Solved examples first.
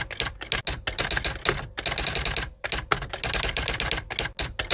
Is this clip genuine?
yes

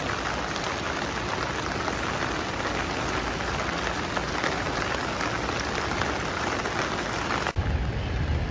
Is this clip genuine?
yes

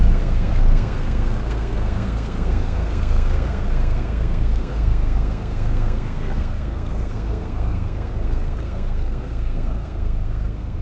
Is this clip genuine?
no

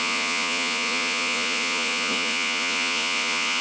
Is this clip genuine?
no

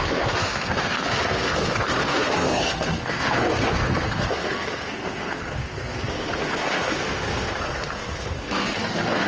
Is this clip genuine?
no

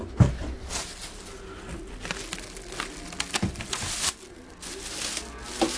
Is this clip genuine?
yes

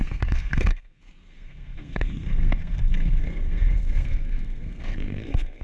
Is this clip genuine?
no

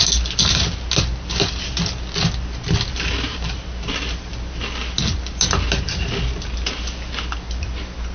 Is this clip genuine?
yes